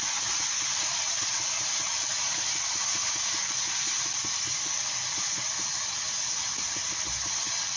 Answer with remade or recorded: recorded